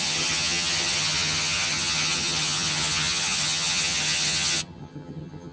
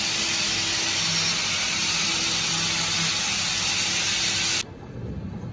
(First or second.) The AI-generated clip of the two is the first